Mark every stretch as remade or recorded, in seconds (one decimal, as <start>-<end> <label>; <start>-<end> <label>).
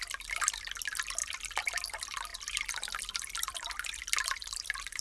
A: 0.0-1.2 recorded; 1.2-1.7 remade; 1.7-2.3 recorded; 2.3-4.0 remade; 4.0-4.4 recorded; 4.4-5.0 remade